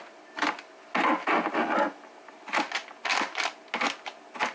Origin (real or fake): real